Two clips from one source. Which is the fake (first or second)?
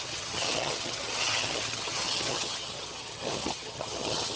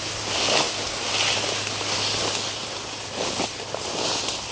first